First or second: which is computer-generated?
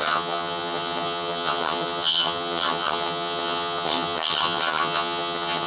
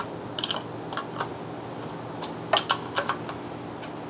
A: first